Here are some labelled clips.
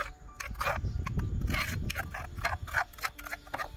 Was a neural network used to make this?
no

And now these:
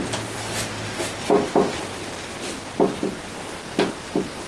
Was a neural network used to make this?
no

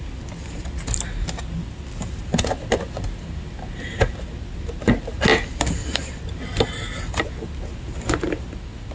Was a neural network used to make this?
no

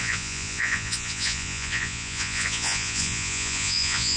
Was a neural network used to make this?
yes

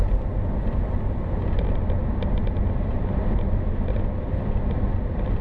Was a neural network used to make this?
no